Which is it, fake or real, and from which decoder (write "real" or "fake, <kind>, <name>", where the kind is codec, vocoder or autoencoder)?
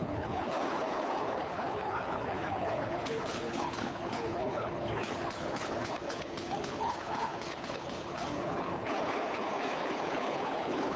fake, codec, HILCodec